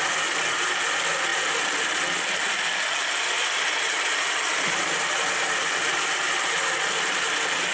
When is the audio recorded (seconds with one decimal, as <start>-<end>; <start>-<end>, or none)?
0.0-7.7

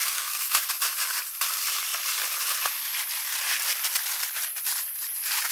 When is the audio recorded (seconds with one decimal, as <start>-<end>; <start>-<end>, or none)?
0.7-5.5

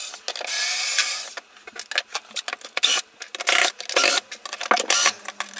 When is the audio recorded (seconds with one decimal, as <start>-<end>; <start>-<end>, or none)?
0.0-5.6